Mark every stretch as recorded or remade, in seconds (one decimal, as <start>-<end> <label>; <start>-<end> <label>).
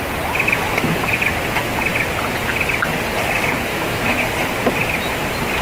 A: 0.0-3.7 recorded; 3.7-4.2 remade; 4.2-5.6 recorded